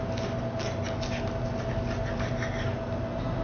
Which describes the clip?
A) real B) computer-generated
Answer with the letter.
A